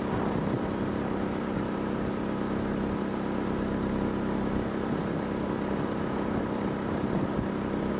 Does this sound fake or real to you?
real